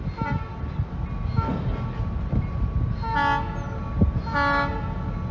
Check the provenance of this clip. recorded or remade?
recorded